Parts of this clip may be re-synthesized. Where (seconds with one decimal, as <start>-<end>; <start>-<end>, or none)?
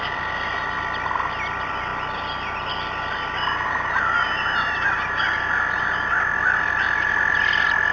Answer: none